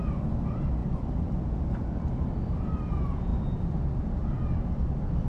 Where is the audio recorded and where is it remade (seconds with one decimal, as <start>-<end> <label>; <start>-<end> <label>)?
0.0-0.8 recorded; 0.8-2.9 remade; 2.9-3.3 recorded; 3.3-3.8 remade; 3.8-5.3 recorded